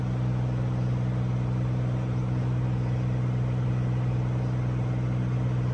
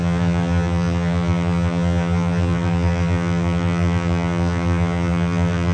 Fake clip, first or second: second